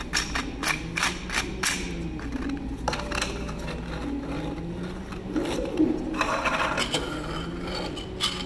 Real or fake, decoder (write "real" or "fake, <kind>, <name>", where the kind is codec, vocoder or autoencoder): real